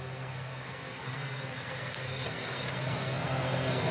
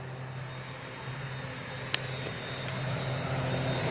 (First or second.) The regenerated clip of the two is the first